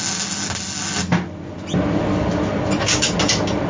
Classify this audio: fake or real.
real